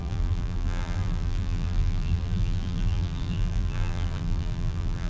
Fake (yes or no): yes